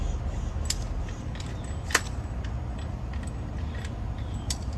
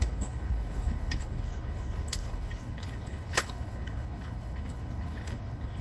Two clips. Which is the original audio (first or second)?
first